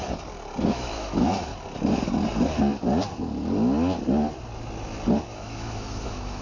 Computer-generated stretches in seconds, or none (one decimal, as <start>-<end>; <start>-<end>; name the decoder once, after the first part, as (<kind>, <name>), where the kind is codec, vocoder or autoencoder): 0.7-1.5 (autoencoder, DAC-VAE); 5.3-6.4